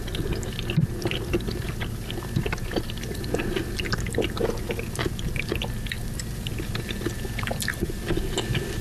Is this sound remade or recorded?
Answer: recorded